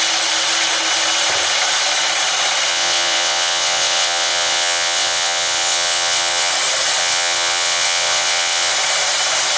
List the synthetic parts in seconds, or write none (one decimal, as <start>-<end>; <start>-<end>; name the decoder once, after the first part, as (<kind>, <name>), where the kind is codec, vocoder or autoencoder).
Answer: 2.7-6.5 (vocoder, WaveNeXt); 7.0-8.7